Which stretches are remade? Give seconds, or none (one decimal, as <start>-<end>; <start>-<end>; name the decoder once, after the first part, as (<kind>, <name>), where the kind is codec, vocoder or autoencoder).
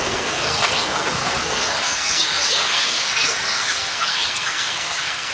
0.0-5.3 (codec, SNAC)